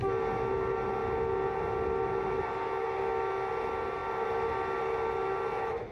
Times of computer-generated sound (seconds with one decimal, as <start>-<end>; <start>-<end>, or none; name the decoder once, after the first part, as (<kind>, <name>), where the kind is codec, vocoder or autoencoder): none